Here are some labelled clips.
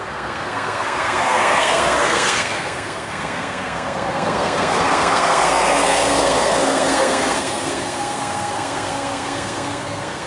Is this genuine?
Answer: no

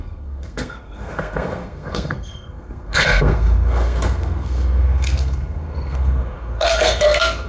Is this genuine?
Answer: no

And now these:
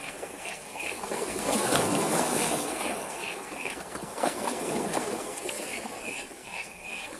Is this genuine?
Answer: no